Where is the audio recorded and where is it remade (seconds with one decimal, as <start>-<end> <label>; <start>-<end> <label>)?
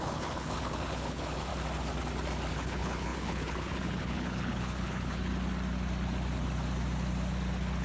0.0-1.5 remade; 1.5-2.5 recorded; 2.5-5.3 remade; 5.3-7.8 recorded